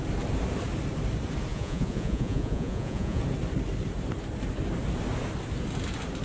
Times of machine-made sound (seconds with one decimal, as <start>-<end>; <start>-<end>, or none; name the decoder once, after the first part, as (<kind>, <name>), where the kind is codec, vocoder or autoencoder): 1.5-3.2 (vocoder, Vocos)